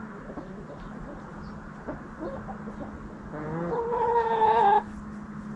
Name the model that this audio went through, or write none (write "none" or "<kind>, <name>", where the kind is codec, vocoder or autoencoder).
none